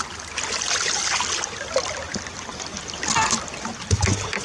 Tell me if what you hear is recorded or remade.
recorded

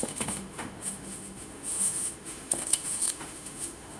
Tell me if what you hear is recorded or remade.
remade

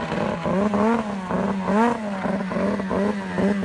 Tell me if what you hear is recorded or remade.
recorded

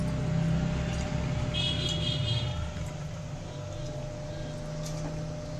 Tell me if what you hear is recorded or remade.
recorded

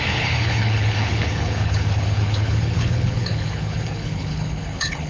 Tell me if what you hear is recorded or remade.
remade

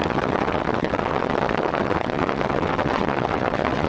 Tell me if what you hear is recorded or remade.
remade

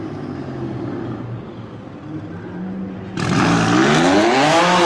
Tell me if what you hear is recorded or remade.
recorded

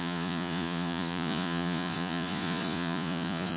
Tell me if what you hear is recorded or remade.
remade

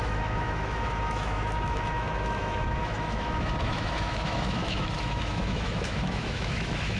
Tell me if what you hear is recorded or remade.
remade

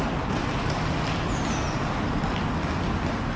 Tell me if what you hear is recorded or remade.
recorded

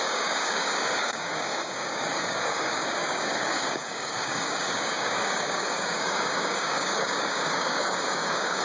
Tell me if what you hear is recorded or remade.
remade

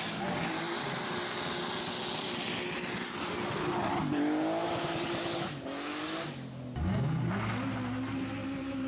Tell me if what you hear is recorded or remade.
recorded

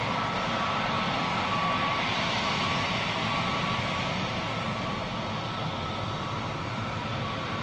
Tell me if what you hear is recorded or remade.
recorded